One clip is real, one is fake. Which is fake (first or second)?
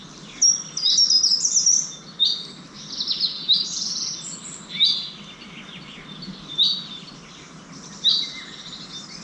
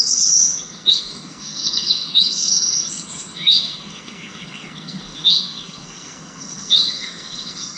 second